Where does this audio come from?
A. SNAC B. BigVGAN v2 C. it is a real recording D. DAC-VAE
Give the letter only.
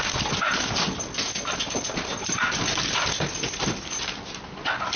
C